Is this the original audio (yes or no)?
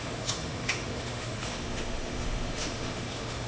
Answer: no